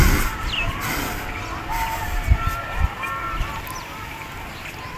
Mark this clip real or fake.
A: real